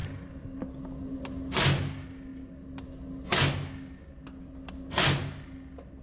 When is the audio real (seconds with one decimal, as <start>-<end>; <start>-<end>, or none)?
0.0-6.0